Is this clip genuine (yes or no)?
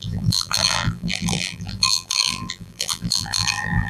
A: no